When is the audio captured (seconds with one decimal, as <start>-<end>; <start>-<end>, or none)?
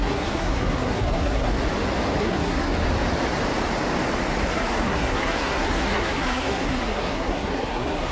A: 1.5-2.2; 2.7-4.5